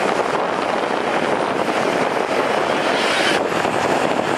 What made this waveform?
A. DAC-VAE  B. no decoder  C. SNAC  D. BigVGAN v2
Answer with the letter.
D